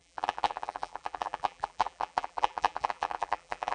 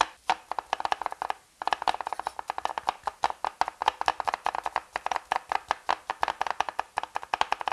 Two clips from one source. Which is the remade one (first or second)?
first